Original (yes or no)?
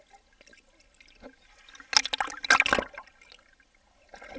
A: yes